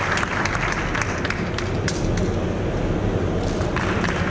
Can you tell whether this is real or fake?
real